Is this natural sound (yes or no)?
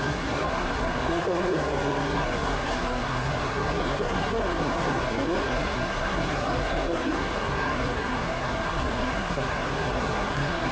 no